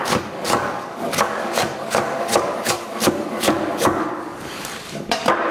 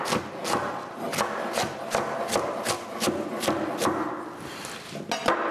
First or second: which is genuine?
second